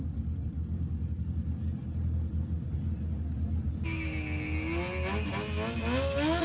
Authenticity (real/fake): real